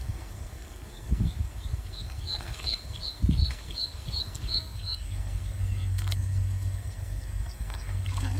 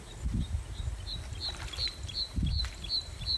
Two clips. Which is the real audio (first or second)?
second